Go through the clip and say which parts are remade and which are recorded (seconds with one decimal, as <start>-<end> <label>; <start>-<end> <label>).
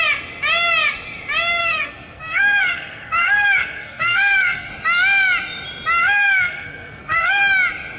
0.0-1.6 recorded; 1.6-4.7 remade; 4.7-6.0 recorded; 6.0-7.4 remade; 7.4-8.0 recorded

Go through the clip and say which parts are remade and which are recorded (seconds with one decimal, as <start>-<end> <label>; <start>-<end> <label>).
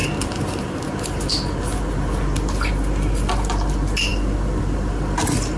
0.0-5.6 recorded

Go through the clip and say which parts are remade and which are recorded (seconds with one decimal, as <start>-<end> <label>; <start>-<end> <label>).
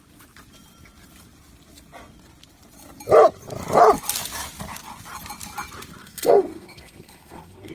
0.0-6.0 recorded; 6.0-7.7 remade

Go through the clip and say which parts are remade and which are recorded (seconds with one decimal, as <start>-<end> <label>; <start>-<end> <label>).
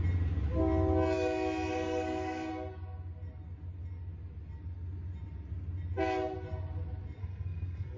0.0-1.7 recorded; 1.7-2.5 remade; 2.5-7.2 recorded; 7.2-8.0 remade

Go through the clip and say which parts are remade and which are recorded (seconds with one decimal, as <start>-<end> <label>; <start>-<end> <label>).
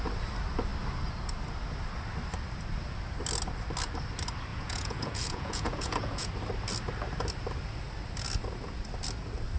0.0-4.5 recorded; 4.5-6.3 remade; 6.3-9.6 recorded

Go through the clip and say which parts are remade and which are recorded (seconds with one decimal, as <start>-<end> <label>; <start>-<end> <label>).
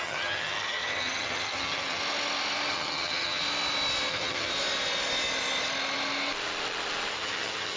0.0-2.0 remade; 2.0-2.7 recorded; 2.7-3.4 remade; 3.4-4.1 recorded; 4.1-4.5 remade; 4.5-7.1 recorded; 7.1-7.8 remade